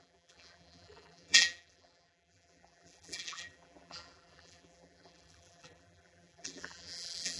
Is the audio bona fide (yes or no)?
no